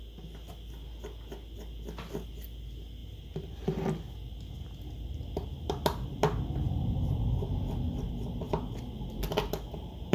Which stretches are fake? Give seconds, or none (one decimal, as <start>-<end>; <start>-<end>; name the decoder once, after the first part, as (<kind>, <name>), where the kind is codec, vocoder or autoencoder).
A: none